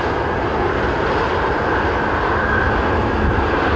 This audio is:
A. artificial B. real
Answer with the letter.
B